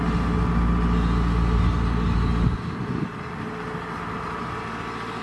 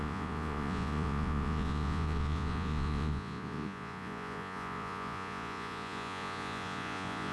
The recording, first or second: first